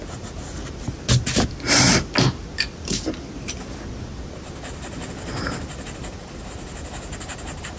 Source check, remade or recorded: recorded